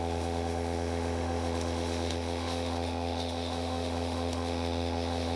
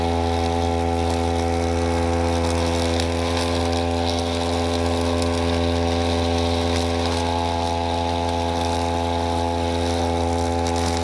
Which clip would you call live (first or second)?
second